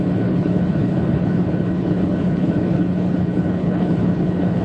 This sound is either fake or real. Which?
fake